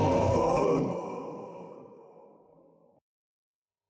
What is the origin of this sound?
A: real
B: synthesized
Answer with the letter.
B